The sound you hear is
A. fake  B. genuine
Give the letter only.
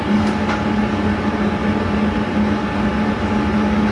B